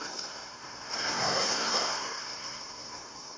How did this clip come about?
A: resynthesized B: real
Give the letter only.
A